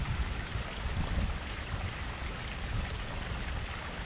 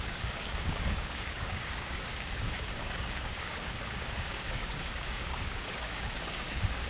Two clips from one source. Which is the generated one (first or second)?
second